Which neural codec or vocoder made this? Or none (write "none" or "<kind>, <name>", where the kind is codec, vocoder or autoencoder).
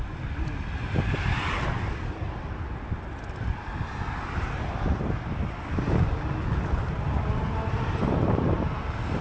none